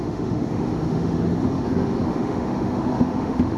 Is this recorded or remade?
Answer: remade